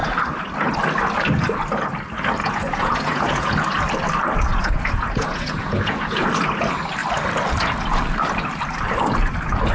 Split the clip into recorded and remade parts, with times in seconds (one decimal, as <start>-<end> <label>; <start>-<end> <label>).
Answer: 0.0-2.4 recorded; 2.4-3.5 remade; 3.5-4.5 recorded; 4.5-6.3 remade; 6.3-9.7 recorded